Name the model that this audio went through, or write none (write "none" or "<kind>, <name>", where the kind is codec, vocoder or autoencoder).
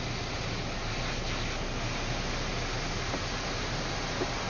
none